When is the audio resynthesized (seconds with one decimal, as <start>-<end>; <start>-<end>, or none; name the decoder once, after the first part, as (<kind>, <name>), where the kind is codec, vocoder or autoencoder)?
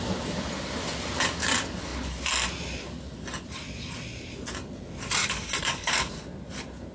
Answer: 5.2-6.1 (codec, DAC)